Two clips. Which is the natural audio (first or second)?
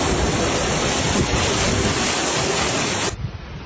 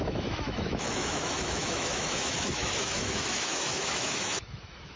first